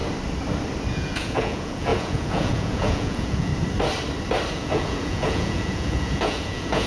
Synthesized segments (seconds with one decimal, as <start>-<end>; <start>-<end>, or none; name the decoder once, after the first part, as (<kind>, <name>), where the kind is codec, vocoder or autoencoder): 0.9-3.5 (vocoder, Vocos); 4.5-6.9